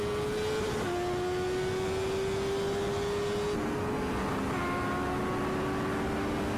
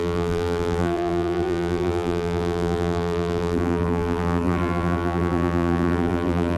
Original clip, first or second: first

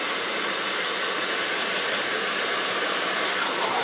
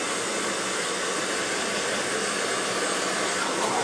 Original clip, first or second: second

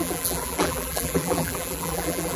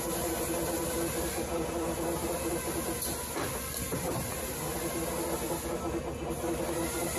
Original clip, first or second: second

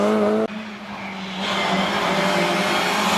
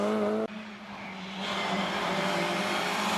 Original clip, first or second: first